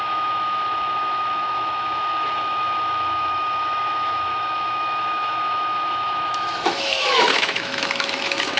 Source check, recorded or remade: remade